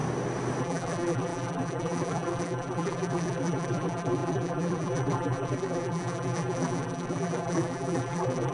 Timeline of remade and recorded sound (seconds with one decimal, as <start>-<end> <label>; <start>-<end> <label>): 0.0-0.6 recorded; 0.6-8.5 remade